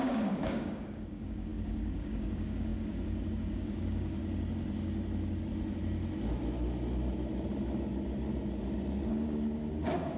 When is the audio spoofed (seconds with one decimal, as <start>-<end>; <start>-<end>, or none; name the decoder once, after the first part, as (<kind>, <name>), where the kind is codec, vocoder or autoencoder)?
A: 0.0-4.2 (codec, DAC); 9.1-10.2